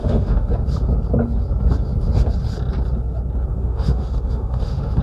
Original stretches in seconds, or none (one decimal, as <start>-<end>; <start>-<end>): 0.5-3.5